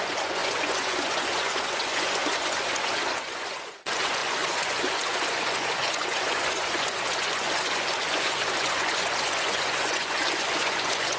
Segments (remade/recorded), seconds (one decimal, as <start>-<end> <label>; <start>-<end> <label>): 0.0-11.2 remade

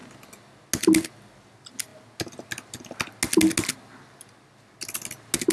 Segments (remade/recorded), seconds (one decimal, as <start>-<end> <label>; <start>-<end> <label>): 0.0-5.5 recorded

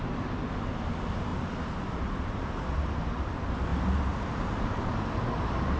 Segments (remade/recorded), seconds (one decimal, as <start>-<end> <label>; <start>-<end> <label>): 0.0-1.3 recorded; 1.3-3.3 remade; 3.3-3.7 recorded; 3.7-5.8 remade

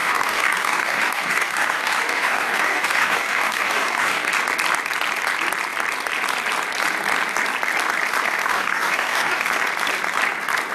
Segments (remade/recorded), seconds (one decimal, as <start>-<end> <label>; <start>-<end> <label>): 0.0-4.3 remade; 4.3-8.4 recorded; 8.4-9.4 remade; 9.4-10.7 recorded

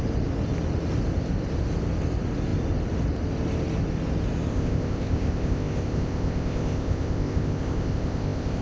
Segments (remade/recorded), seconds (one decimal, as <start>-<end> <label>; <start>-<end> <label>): 0.0-4.5 recorded; 4.5-8.6 remade

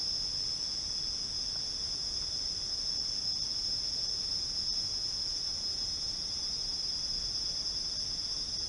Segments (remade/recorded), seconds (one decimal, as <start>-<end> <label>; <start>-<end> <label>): 0.0-8.7 recorded

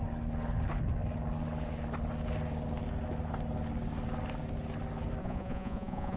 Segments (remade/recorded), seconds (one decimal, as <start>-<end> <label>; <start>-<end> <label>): 0.0-5.2 recorded; 5.2-6.2 remade